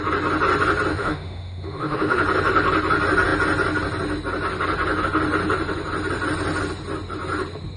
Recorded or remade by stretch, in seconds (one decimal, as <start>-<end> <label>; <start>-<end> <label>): 0.0-0.9 recorded; 0.9-2.2 remade; 2.2-7.8 recorded